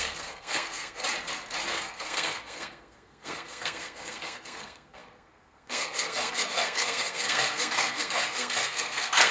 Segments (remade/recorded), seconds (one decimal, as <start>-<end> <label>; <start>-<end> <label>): 0.0-1.0 remade; 1.0-1.7 recorded; 1.7-9.3 remade